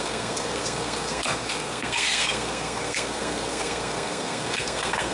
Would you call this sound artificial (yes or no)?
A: yes